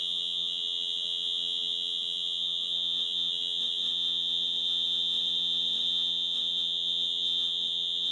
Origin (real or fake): fake